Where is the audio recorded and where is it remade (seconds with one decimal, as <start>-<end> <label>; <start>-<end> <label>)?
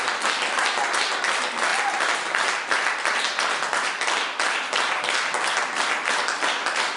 0.0-7.0 recorded